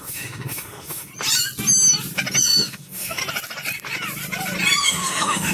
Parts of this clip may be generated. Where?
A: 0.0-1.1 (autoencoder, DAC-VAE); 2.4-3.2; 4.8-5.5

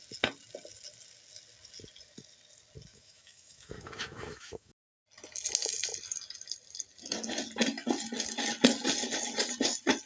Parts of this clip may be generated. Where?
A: 2.9-4.8 (autoencoder, DAC-VAE)

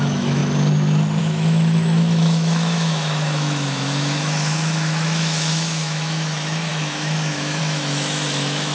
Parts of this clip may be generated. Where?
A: 0.0-0.4 (autoencoder, DAC-VAE); 1.2-8.7

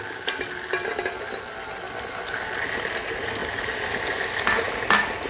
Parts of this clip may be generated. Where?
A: none

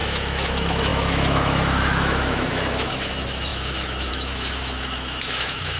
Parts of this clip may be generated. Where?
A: 0.0-5.8 (autoencoder, DAC-VAE)